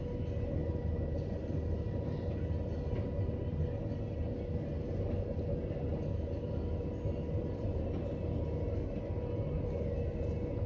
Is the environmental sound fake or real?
real